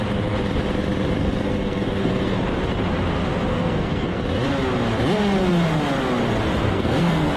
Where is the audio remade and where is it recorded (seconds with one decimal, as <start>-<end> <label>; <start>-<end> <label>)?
0.0-1.2 recorded; 1.2-2.4 remade; 2.4-3.5 recorded; 3.5-4.2 remade; 4.2-6.6 recorded; 6.6-7.4 remade